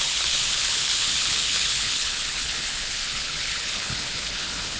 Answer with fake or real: fake